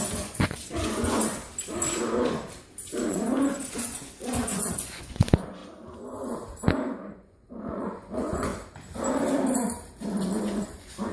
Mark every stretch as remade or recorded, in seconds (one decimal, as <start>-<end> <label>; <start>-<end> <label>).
0.0-1.4 remade; 1.4-3.1 recorded; 3.1-5.6 remade; 5.6-7.1 recorded; 7.1-8.5 remade; 8.5-10.4 recorded; 10.4-11.1 remade